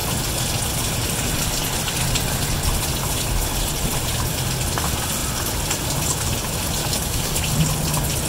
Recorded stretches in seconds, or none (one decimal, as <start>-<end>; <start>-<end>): 0.0-6.8; 7.4-8.3